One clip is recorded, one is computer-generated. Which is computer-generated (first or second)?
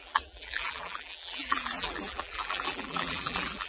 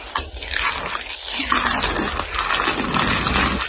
first